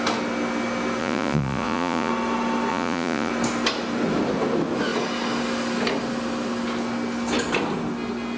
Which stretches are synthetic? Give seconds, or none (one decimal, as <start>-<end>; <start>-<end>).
1.0-2.1; 2.7-3.3